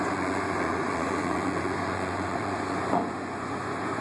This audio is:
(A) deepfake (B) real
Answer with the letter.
A